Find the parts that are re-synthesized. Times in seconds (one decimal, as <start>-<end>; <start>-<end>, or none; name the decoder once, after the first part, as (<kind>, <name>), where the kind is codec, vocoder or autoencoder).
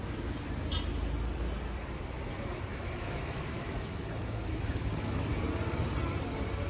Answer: 2.7-5.2 (autoencoder, DAC-VAE)